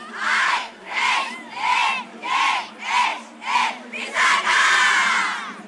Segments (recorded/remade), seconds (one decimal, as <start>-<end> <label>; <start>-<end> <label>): 0.0-0.4 recorded; 0.4-1.0 remade; 1.0-5.7 recorded

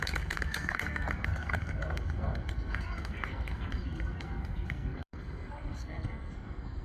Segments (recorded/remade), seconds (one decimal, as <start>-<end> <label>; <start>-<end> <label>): 0.0-6.8 remade

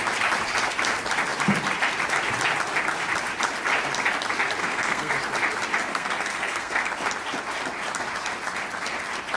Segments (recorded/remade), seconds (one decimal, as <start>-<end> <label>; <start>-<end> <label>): 0.0-4.6 recorded; 4.6-5.1 remade; 5.1-5.9 recorded; 5.9-6.9 remade; 6.9-9.4 recorded

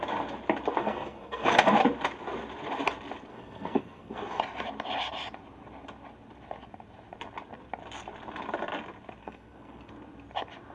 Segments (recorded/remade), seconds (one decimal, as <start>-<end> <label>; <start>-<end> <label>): 0.0-0.8 recorded; 0.8-1.7 remade; 1.7-3.3 recorded; 3.3-4.4 remade; 4.4-9.2 recorded; 9.2-9.9 remade; 9.9-10.7 recorded